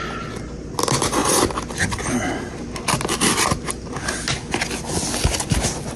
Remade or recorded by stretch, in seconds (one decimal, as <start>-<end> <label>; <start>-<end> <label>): 0.0-6.0 recorded